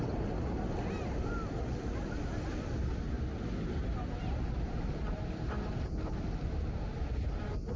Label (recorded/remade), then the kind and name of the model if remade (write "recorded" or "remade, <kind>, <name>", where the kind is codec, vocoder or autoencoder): recorded